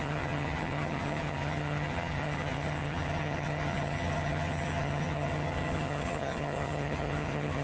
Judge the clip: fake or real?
fake